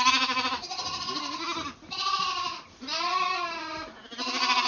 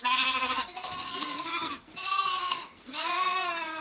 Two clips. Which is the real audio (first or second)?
first